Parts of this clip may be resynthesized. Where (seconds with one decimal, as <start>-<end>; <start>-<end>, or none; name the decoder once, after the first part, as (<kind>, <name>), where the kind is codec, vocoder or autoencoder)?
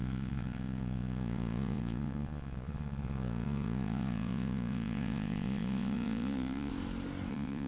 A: 0.0-6.7 (vocoder, Vocos); 7.3-7.7